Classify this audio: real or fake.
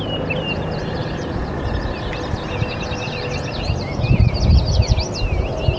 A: real